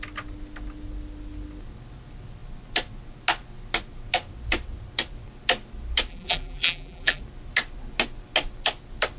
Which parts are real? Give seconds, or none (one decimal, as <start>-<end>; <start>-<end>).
0.0-6.1; 7.2-9.2

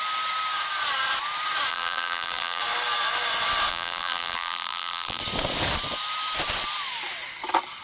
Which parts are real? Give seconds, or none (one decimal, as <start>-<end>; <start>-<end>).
0.0-1.7; 2.6-3.7; 5.2-7.8

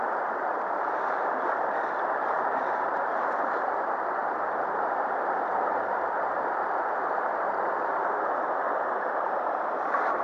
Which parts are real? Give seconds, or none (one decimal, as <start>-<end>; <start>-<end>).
none

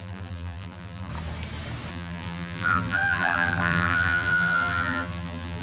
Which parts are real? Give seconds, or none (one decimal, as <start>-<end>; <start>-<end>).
1.1-1.9

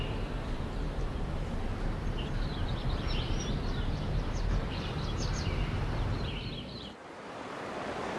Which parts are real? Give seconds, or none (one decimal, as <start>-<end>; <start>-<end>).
2.8-3.5